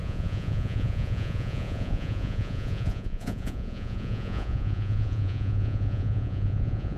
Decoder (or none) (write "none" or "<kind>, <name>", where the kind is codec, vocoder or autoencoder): vocoder, Vocos